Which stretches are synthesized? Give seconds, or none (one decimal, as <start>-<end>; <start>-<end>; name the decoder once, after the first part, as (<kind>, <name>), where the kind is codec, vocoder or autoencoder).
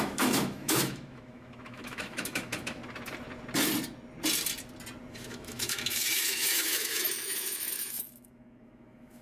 0.0-2.8 (autoencoder, DAC-VAE); 5.1-9.2